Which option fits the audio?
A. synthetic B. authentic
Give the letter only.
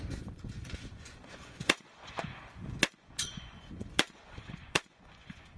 A